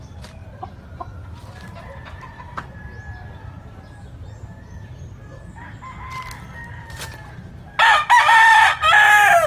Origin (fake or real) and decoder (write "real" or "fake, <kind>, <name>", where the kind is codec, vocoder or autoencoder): real